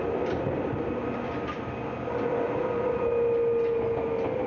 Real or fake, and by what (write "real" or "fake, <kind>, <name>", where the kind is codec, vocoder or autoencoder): real